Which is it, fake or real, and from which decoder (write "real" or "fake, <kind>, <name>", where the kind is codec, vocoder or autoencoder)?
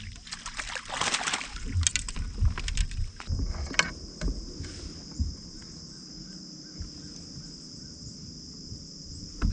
real